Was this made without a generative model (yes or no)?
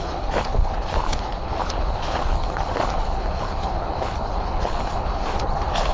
no